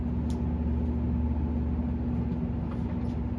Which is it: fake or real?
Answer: real